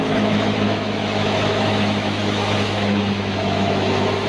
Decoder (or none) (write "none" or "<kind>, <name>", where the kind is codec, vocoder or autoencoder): autoencoder, DAC-VAE